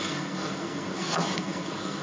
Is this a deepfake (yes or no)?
yes